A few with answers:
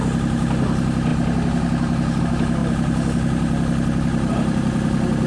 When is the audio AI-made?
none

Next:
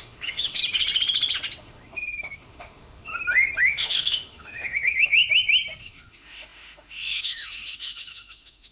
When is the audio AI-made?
0.0-0.6 (autoencoder, DAC-VAE); 1.6-3.1; 3.6-5.2; 5.8-8.7

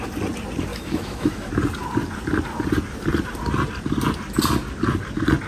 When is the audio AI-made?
0.7-1.5 (autoencoder, DAC-VAE)